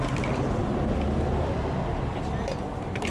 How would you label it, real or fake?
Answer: real